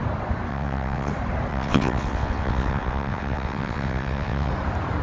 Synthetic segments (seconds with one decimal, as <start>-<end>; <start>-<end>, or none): 0.5-1.1; 1.5-4.5